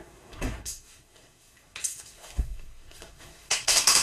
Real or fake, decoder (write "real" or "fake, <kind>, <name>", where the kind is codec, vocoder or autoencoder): fake, codec, SNAC